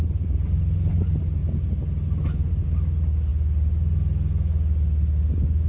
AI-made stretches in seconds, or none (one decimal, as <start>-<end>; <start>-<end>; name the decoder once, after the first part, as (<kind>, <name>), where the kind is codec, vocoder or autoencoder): none